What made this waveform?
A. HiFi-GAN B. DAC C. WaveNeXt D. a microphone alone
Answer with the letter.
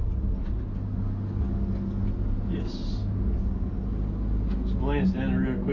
D